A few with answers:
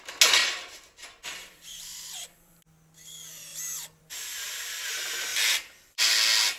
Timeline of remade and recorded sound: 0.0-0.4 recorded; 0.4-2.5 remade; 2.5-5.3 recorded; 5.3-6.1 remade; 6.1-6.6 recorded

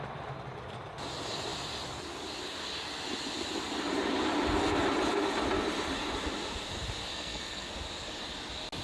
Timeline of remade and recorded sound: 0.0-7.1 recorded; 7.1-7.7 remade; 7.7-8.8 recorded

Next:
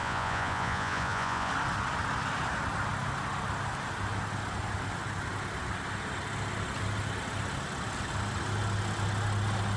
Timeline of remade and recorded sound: 0.0-1.5 remade; 1.5-9.8 recorded